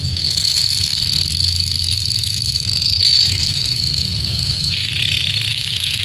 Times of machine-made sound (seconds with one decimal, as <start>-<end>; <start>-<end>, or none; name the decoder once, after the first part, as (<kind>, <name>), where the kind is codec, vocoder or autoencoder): 0.0-2.7 (codec, SNAC); 3.3-4.9; 5.5-6.0